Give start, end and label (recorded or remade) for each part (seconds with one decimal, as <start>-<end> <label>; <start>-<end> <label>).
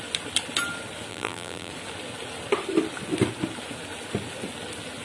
0.0-1.1 recorded; 1.1-1.7 remade; 1.7-5.0 recorded